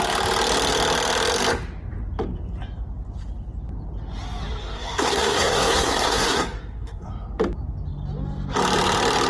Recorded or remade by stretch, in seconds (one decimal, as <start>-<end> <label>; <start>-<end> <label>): 0.0-4.6 recorded; 4.6-7.1 remade; 7.1-9.3 recorded